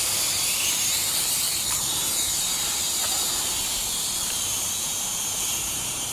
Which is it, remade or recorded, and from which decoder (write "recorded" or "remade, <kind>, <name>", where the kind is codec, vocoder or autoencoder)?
remade, vocoder, BigVGAN v2